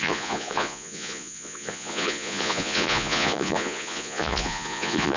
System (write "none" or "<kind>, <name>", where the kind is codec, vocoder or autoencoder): vocoder, Vocos